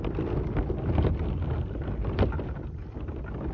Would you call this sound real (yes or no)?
yes